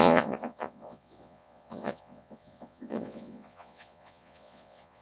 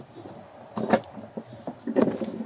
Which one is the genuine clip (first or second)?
second